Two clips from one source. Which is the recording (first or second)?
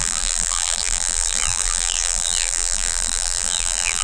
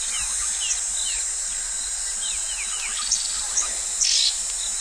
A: second